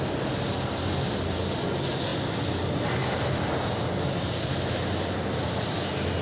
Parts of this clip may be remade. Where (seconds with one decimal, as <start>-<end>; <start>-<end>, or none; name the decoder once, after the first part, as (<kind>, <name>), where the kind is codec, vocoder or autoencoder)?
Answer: none